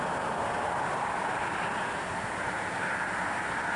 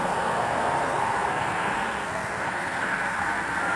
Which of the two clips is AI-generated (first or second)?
second